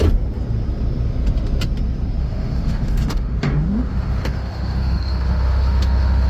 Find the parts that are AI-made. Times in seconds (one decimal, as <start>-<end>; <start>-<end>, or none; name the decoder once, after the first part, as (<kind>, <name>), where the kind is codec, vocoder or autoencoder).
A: 2.2-6.3 (autoencoder, DAC-VAE)